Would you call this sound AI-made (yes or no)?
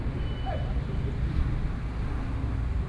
no